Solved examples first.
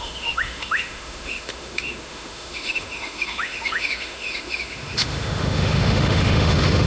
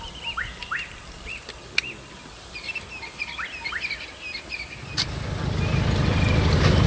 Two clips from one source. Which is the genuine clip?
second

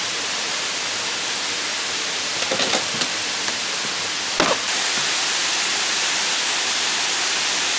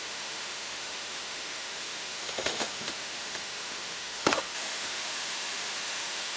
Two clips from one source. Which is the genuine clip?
first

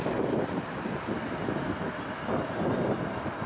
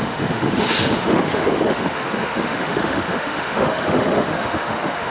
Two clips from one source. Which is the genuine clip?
first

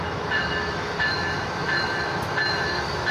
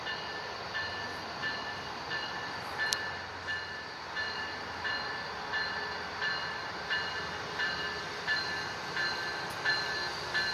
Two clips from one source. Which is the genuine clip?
second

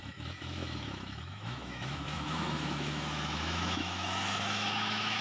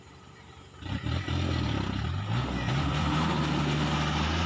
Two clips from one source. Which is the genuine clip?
second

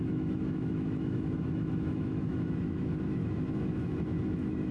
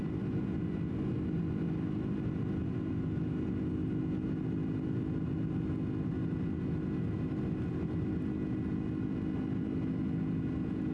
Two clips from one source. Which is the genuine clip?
second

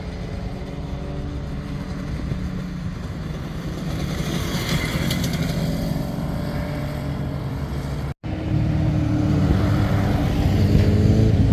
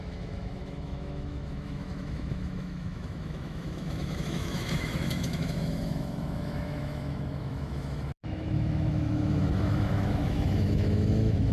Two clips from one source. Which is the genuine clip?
first